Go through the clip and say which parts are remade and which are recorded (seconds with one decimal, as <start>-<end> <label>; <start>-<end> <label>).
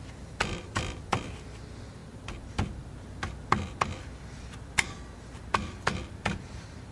0.0-6.9 remade